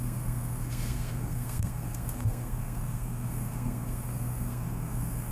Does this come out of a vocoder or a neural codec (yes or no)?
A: yes